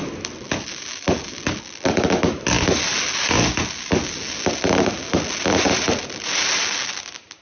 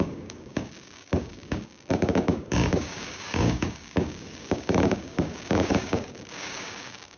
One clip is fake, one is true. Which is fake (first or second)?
second